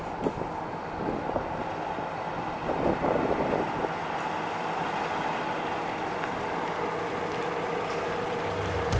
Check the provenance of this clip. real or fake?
real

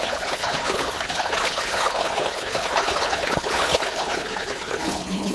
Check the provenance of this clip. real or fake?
fake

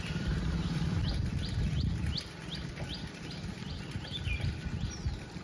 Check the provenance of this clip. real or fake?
fake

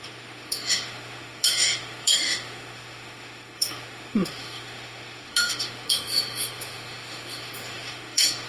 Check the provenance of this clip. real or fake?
fake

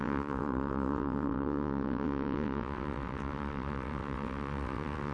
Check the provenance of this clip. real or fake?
fake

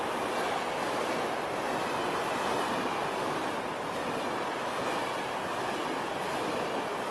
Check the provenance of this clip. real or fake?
real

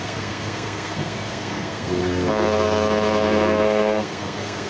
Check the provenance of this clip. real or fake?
fake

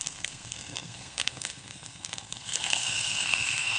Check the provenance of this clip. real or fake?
fake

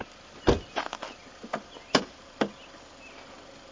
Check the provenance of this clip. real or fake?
real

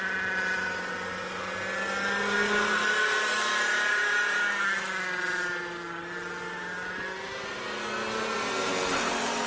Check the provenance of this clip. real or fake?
real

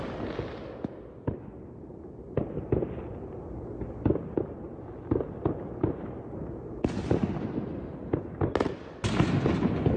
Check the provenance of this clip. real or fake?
real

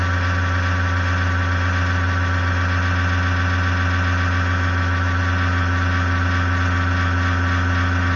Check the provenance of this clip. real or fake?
real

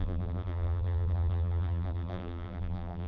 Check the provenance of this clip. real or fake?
fake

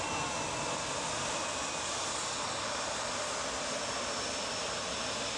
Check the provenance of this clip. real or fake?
real